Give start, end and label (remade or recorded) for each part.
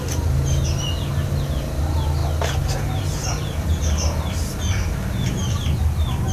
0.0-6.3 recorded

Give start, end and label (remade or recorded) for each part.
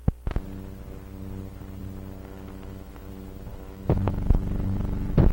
0.0-2.2 recorded; 2.2-3.1 remade; 3.1-3.5 recorded; 3.5-5.3 remade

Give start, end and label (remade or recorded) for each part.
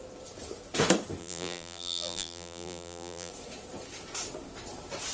0.0-1.2 recorded; 1.2-3.3 remade; 3.3-5.1 recorded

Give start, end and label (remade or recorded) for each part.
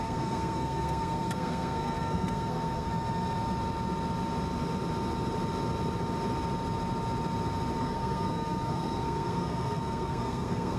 0.0-2.9 remade; 2.9-7.8 recorded; 7.8-10.8 remade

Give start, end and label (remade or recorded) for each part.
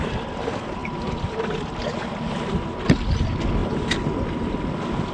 0.0-5.1 recorded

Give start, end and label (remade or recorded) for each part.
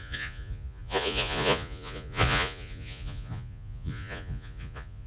0.0-5.1 remade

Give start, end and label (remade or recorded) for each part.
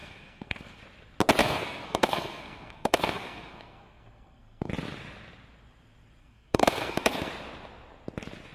0.0-0.8 remade; 0.8-1.4 recorded; 1.4-4.7 remade; 4.7-6.2 recorded; 6.2-7.3 remade; 7.3-8.5 recorded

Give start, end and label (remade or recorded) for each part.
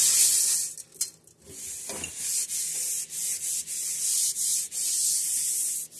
0.0-6.0 recorded